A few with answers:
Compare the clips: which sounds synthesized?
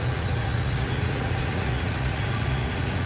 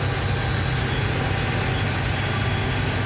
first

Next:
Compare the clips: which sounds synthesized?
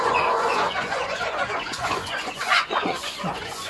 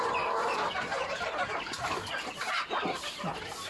first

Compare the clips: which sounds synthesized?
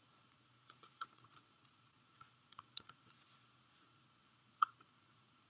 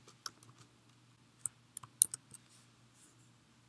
first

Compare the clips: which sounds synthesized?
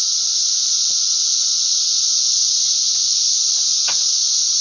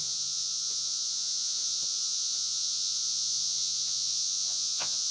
second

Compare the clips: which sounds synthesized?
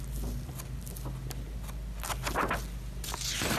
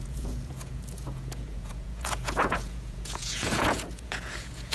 second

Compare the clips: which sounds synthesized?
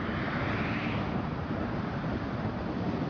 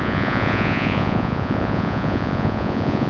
second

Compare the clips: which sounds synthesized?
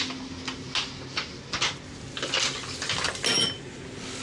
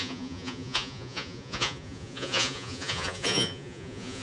second